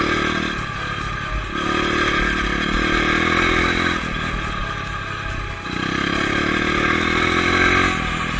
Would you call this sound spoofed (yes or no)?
no